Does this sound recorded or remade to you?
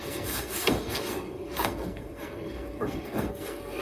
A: remade